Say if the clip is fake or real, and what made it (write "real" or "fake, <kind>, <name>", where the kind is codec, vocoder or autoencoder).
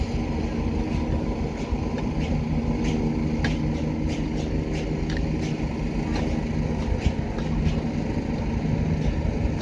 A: real